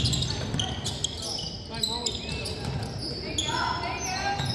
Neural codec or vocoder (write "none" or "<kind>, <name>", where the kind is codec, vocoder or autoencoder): none